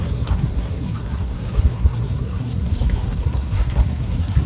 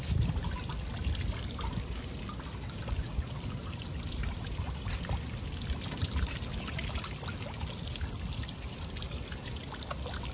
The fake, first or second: first